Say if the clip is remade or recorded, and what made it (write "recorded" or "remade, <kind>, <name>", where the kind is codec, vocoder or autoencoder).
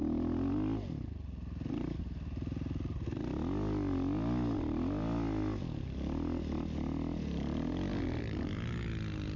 recorded